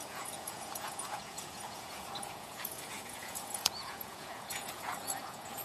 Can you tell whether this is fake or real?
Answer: fake